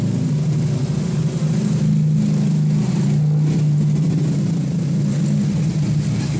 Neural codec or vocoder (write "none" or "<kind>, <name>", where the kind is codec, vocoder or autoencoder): none